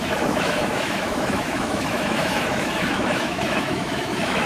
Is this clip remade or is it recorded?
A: remade